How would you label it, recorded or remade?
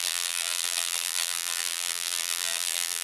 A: remade